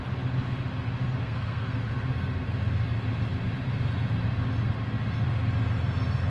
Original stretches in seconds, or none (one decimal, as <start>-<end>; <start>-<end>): 0.0-1.2; 1.8-6.3